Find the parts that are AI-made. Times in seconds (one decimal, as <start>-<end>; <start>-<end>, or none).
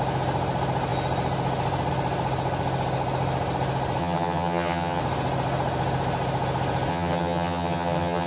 4.0-5.0; 6.9-8.3